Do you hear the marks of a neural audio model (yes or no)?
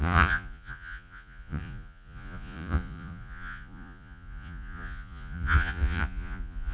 yes